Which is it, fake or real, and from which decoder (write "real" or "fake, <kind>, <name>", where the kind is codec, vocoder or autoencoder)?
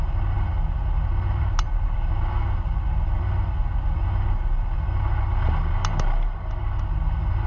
real